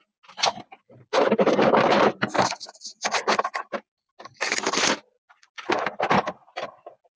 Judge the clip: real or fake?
real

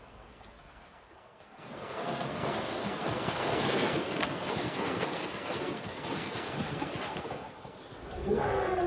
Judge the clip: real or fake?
fake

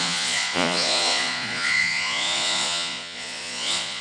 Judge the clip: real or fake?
fake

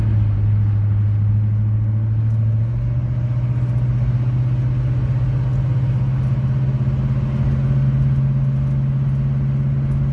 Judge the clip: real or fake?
real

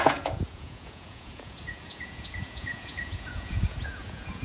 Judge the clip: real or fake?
fake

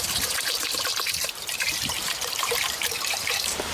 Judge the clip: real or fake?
fake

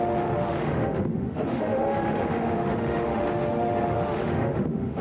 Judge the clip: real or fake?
fake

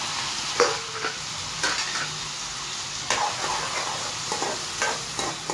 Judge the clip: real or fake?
real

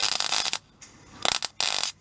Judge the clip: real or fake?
real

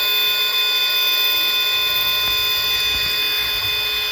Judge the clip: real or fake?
real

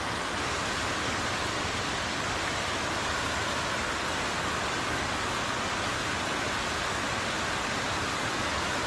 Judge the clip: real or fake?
real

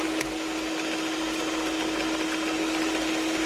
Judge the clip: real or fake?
real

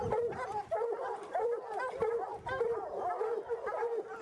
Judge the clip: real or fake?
real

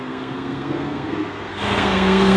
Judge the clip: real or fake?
fake